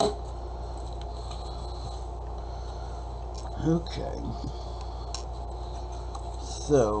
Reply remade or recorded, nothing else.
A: recorded